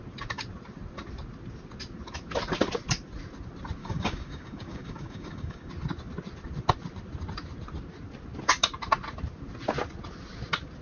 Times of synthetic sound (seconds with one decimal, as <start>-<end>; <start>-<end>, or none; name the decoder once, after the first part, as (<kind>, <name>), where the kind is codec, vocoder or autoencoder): 3.8-5.7 (codec, DAC)